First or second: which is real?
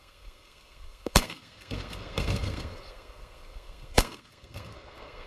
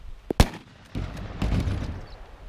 second